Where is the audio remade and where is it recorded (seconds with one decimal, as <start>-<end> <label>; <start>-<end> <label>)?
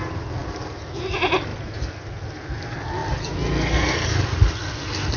0.0-5.2 recorded